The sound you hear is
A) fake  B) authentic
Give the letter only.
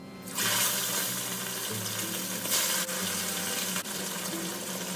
B